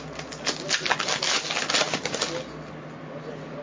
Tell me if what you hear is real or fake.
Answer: real